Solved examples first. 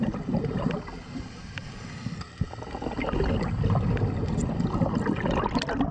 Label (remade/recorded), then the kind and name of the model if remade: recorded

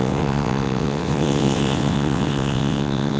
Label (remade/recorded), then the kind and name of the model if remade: remade, vocoder, WaveNeXt